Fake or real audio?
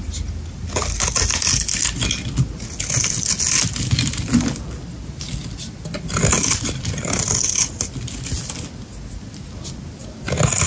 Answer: real